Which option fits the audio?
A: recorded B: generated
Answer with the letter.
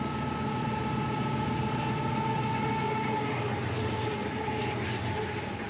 A